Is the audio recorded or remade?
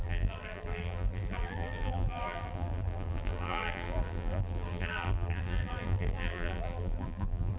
remade